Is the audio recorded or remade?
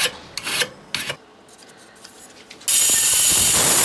recorded